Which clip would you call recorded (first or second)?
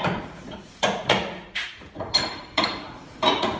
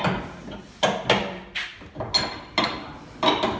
second